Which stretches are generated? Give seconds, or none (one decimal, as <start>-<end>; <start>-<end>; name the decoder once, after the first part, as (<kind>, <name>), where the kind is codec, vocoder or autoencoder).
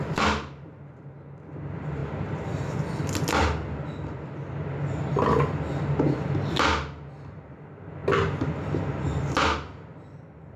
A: none